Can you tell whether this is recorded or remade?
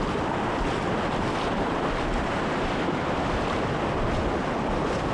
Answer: recorded